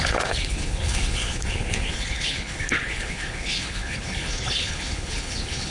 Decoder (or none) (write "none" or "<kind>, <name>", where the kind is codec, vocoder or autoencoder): codec, HILCodec